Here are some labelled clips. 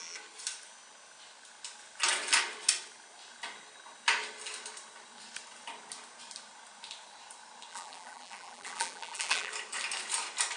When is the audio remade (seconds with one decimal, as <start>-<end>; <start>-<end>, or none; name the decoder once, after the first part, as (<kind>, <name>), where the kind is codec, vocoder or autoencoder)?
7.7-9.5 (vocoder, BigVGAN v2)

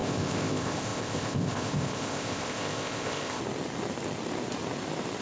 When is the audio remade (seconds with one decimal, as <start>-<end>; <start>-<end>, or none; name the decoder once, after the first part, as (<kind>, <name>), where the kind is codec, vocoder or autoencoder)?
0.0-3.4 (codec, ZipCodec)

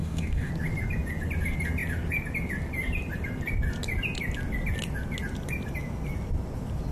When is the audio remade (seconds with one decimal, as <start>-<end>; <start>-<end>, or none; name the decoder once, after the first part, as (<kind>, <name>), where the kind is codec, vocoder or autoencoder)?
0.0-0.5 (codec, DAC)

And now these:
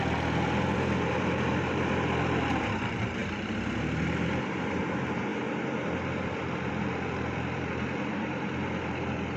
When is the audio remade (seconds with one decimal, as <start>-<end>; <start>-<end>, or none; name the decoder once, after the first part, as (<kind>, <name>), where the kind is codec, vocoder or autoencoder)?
0.0-9.4 (vocoder, BigVGAN v2)

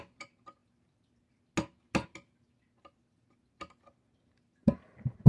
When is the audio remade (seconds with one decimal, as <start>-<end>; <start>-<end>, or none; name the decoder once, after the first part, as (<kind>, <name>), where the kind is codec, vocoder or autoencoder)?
none

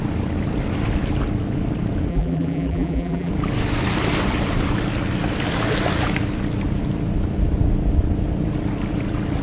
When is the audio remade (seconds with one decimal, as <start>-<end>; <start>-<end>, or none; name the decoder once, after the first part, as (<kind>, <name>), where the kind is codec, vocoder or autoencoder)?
2.1-3.3 (vocoder, BigVGAN v2)

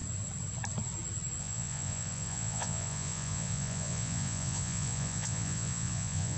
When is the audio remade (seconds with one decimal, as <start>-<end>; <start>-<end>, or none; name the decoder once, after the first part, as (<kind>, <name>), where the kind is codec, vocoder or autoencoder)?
1.4-6.4 (vocoder, Vocos)

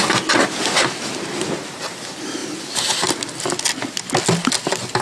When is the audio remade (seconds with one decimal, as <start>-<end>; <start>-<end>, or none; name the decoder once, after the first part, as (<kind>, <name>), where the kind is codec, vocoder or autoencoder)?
none